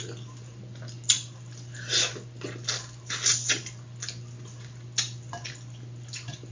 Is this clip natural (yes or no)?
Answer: yes